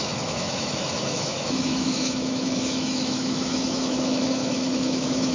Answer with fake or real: fake